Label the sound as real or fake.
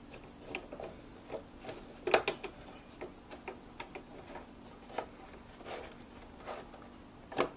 real